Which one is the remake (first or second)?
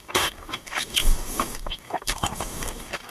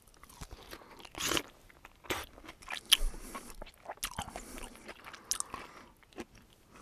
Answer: first